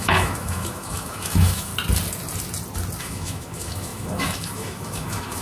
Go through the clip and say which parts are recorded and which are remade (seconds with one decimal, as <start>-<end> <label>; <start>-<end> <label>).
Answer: 0.0-1.7 remade; 1.7-3.0 recorded; 3.0-5.4 remade